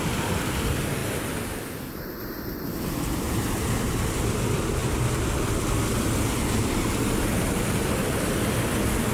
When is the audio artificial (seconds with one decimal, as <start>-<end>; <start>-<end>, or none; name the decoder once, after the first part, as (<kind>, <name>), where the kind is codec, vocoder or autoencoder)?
none